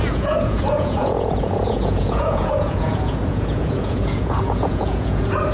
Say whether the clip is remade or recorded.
remade